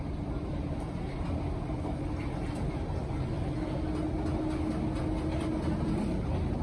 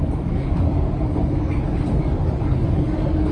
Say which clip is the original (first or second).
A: first